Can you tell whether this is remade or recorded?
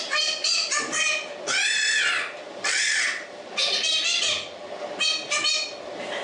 recorded